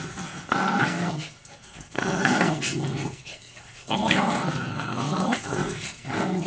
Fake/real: fake